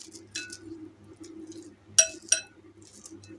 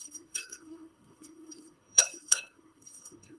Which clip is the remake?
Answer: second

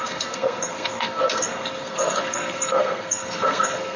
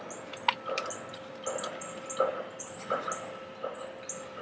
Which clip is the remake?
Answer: first